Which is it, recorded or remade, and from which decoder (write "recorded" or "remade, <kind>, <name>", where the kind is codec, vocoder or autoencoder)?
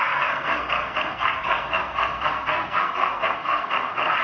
remade, codec, SNAC